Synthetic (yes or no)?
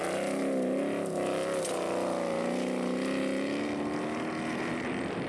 no